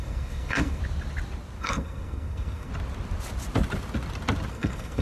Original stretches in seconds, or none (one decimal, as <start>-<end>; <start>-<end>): 0.8-1.6; 2.7-4.5